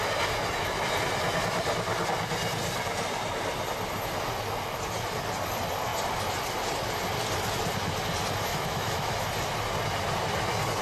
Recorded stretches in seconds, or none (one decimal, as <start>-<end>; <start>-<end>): 0.0-8.5; 9.2-10.8